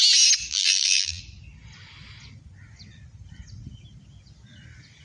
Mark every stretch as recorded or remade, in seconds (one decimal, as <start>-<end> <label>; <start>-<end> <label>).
0.0-0.5 recorded; 0.5-1.2 remade; 1.2-5.0 recorded